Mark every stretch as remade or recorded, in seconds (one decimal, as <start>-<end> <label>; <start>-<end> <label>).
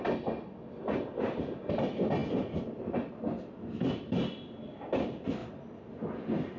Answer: 0.0-6.6 recorded